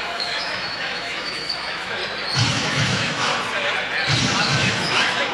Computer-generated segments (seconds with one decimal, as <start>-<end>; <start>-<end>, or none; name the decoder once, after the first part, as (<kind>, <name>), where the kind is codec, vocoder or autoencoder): 0.0-2.0 (autoencoder, DAC-VAE); 2.5-3.3; 4.4-5.3

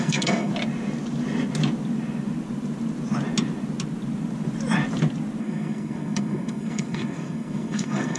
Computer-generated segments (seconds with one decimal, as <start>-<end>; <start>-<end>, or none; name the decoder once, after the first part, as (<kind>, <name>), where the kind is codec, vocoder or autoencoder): 0.0-0.5 (codec, SNAC); 5.4-8.2

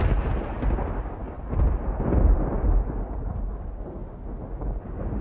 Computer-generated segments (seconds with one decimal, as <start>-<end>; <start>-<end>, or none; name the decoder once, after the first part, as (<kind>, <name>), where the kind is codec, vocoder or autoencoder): 1.2-1.9 (vocoder, BigVGAN v2)